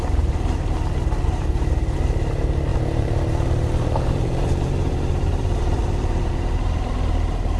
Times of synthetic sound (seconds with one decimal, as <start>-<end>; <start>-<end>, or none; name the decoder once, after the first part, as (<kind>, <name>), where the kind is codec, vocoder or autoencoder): 2.7-6.3 (vocoder, BigVGAN v2)